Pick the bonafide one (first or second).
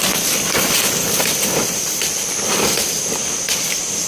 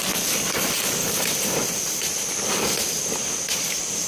second